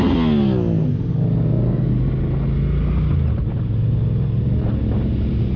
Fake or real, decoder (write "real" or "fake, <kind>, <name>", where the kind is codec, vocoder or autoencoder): real